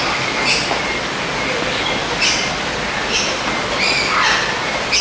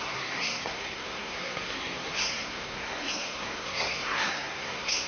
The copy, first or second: second